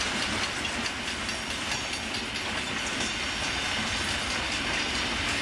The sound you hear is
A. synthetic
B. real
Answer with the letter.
B